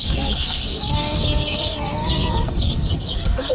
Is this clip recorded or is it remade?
remade